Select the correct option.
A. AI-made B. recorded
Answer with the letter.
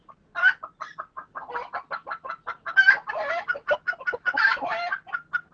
B